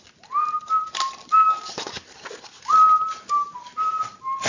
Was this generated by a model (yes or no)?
no